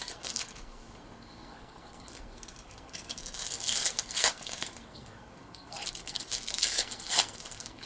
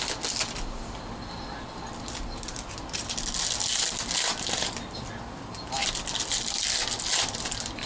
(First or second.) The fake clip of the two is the first